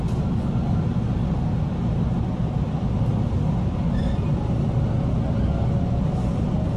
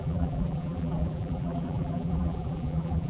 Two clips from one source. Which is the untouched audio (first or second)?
first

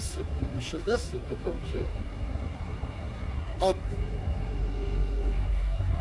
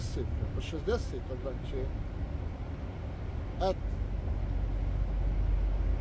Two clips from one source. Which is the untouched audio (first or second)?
second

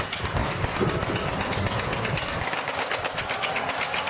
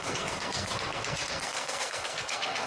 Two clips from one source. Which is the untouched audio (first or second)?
first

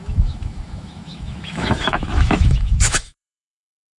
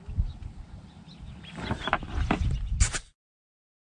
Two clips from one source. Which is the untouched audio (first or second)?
second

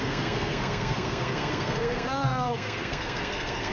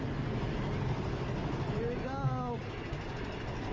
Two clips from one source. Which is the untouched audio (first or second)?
second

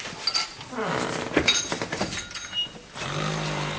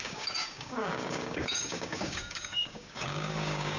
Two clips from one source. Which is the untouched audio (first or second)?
first